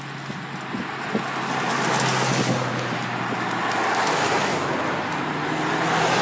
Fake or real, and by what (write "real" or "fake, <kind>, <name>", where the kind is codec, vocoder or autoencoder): real